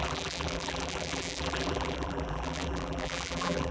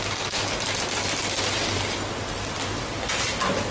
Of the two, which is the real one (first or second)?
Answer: second